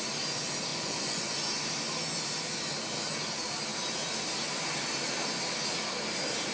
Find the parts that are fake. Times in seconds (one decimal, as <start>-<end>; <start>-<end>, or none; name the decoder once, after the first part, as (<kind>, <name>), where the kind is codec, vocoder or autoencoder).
0.7-1.5 (vocoder, Vocos)